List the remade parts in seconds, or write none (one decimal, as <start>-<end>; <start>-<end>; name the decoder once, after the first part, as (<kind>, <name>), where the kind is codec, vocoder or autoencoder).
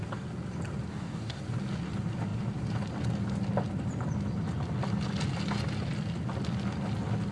0.9-1.4 (codec, DAC)